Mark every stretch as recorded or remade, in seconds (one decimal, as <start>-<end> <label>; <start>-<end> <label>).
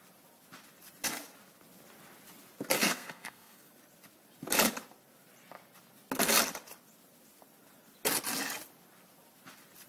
0.0-2.8 recorded; 2.8-3.7 remade; 3.7-9.9 recorded